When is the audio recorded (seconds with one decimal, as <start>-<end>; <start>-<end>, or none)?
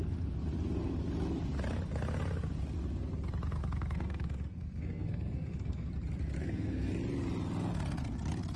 0.0-3.6; 5.9-6.4; 6.9-8.6